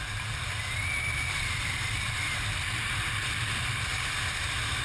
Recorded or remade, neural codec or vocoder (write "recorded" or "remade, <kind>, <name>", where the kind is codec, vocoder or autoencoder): recorded